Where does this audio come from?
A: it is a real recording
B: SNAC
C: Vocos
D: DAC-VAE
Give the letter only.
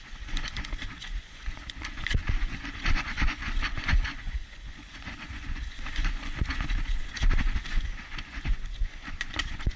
C